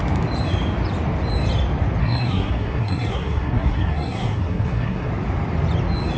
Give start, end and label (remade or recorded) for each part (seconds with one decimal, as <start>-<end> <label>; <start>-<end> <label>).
0.0-2.0 recorded; 2.0-5.1 remade; 5.1-6.2 recorded